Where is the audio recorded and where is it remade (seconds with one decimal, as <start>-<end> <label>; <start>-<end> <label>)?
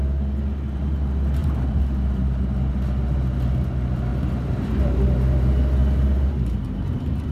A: 0.0-1.4 recorded; 1.4-2.7 remade; 2.7-4.1 recorded; 4.1-4.6 remade; 4.6-7.3 recorded